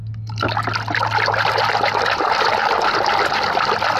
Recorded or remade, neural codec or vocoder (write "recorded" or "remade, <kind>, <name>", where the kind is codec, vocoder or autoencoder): recorded